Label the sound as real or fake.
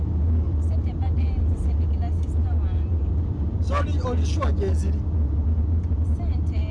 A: real